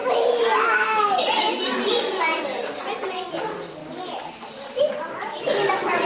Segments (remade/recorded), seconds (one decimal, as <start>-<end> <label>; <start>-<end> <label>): 0.0-6.1 recorded